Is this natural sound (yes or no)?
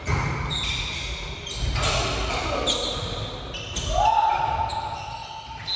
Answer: yes